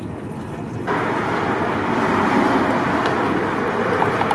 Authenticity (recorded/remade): recorded